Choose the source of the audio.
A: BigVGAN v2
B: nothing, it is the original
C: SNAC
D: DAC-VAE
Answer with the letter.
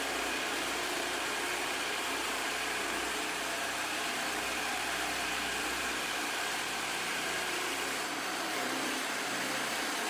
A